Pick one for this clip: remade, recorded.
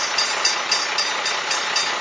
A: recorded